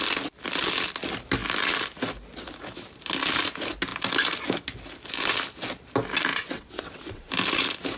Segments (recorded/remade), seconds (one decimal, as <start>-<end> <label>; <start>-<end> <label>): 0.0-6.3 recorded; 6.3-7.3 remade; 7.3-8.0 recorded